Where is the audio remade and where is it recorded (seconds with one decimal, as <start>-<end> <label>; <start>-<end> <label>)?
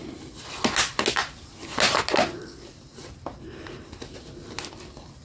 0.0-5.2 recorded